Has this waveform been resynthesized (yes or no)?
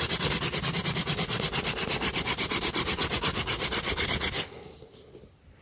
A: no